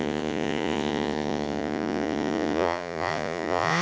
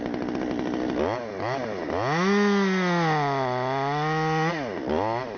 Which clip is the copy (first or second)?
first